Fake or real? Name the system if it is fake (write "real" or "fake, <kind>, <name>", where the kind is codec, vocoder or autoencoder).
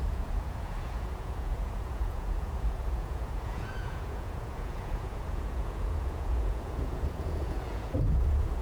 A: fake, vocoder, Vocos